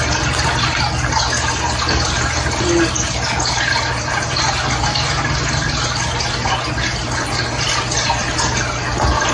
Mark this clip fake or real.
real